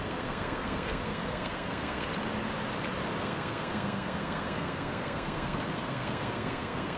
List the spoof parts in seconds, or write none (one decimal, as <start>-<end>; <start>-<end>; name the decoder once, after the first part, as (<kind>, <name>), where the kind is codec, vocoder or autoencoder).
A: 0.0-2.1 (codec, SNAC); 3.2-7.0